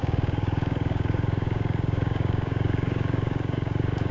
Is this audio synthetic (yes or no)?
yes